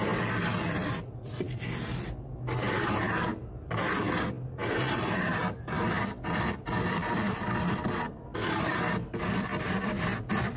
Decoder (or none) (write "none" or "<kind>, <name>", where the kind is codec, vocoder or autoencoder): none